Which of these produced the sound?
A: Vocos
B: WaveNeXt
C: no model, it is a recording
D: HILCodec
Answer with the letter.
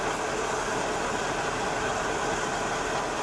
C